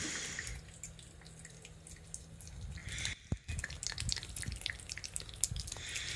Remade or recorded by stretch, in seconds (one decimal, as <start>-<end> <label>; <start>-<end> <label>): 0.0-2.8 recorded; 2.8-3.6 remade; 3.6-6.2 recorded